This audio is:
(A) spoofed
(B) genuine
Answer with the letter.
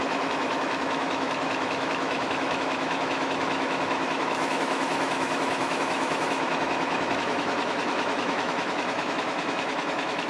A